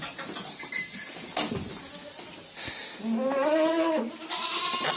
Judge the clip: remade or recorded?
recorded